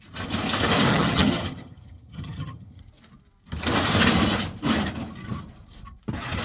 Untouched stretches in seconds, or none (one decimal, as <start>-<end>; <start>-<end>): 0.0-0.9; 2.8-6.4